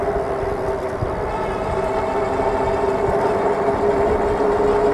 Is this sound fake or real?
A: real